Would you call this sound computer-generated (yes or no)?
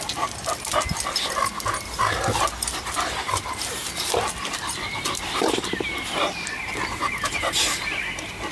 no